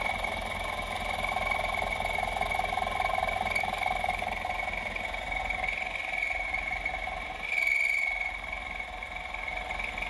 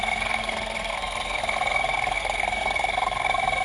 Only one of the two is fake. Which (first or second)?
second